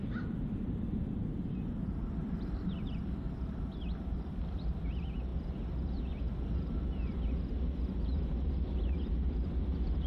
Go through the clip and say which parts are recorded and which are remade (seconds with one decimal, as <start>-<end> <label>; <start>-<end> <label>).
0.0-4.8 remade; 4.8-10.1 recorded